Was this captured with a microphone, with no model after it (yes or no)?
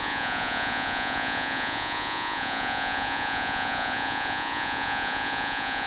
no